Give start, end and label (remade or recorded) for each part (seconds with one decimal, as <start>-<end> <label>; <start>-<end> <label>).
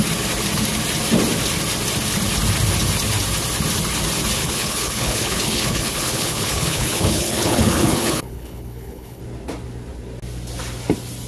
0.0-4.4 recorded; 4.4-9.2 remade; 9.2-11.3 recorded